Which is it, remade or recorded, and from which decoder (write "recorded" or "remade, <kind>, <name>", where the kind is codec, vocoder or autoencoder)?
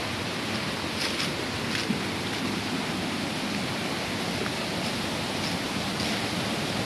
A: recorded